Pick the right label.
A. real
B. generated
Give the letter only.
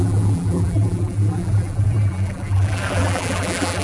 B